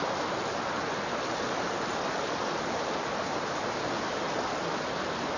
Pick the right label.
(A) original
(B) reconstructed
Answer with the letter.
A